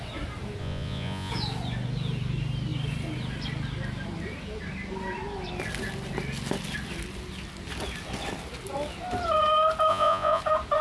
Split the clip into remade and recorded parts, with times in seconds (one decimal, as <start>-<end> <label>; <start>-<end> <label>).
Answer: 0.0-0.6 recorded; 0.6-1.3 remade; 1.3-9.9 recorded; 9.9-10.4 remade; 10.4-10.8 recorded